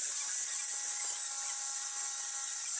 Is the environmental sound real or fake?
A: real